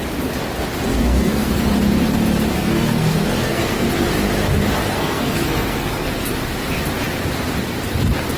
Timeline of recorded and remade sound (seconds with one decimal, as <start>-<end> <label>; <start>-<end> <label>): 0.0-0.9 recorded; 0.9-1.7 remade; 1.7-2.6 recorded; 2.6-3.9 remade; 3.9-4.9 recorded; 4.9-6.4 remade; 6.4-8.4 recorded